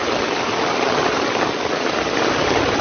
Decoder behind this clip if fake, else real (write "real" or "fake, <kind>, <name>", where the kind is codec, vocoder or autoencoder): real